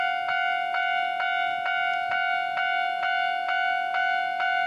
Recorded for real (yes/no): yes